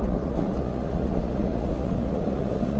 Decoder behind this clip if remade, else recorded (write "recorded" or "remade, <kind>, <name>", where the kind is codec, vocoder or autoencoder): remade, vocoder, Vocos